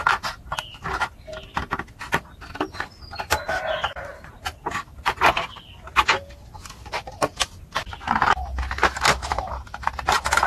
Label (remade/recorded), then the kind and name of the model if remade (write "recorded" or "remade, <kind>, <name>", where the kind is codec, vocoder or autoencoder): recorded